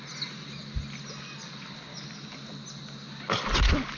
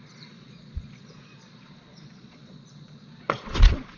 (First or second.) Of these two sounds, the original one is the first